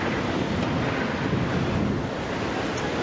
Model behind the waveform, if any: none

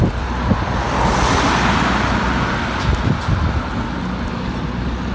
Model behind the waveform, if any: none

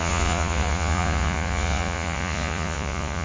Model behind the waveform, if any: vocoder, Vocos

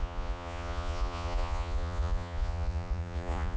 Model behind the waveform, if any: vocoder, Vocos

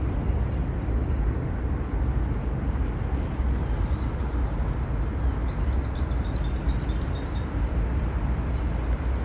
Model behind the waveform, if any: none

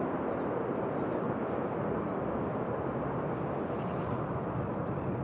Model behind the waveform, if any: none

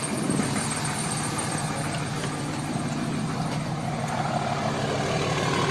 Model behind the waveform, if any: none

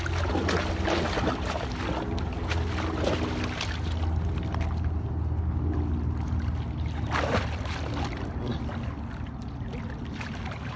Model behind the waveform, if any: none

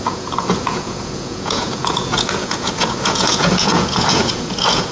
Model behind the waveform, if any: vocoder, Vocos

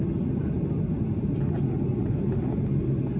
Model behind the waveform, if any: none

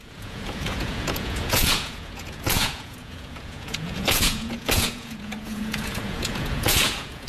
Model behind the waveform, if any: vocoder, Vocos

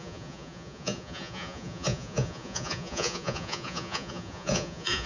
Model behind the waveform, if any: vocoder, Vocos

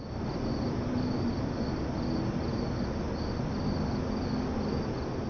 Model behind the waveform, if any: none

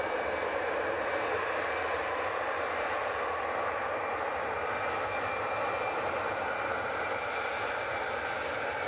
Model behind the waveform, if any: none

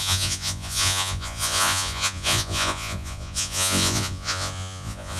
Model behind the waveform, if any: vocoder, Vocos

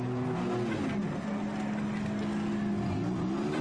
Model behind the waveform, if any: none